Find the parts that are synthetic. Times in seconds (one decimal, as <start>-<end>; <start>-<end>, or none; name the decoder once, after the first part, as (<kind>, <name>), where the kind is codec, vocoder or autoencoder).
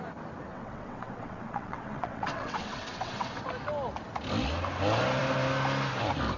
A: 0.5-3.4 (vocoder, WaveNeXt)